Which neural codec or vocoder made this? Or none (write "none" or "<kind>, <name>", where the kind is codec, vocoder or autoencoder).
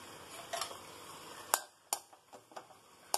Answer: none